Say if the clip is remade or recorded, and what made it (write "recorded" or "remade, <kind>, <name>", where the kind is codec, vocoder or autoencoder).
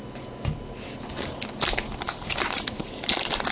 recorded